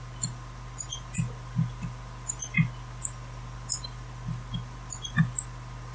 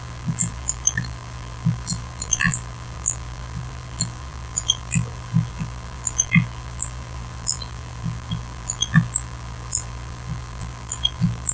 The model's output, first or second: second